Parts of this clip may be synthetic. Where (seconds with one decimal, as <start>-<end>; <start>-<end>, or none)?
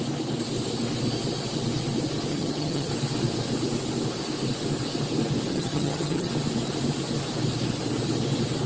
2.3-2.9; 5.5-6.3